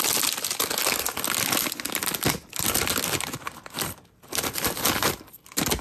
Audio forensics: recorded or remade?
recorded